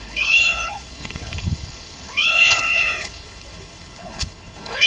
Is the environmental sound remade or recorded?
remade